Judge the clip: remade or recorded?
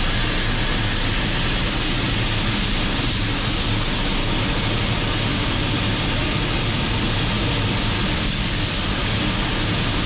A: recorded